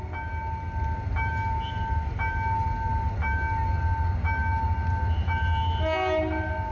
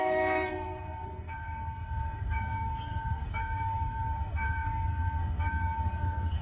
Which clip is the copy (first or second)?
second